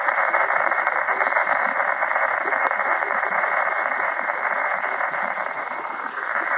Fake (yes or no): yes